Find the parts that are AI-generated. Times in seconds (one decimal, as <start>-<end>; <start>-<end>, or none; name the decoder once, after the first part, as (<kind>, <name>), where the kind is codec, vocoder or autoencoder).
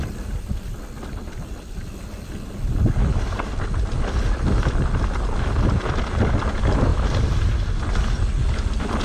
none